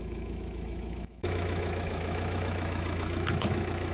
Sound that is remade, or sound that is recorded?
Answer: remade